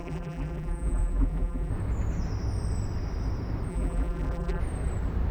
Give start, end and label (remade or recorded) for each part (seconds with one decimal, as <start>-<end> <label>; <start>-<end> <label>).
0.0-1.7 remade; 1.7-3.7 recorded; 3.7-4.6 remade; 4.6-5.3 recorded